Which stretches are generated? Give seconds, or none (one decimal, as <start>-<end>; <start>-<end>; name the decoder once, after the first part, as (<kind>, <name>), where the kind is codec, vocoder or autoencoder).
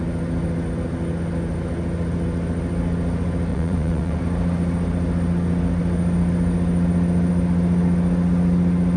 3.5-4.2 (vocoder, Vocos)